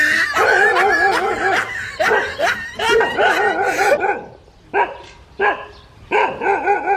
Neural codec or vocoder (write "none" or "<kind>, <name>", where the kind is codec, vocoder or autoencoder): none